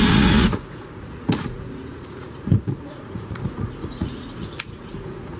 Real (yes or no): no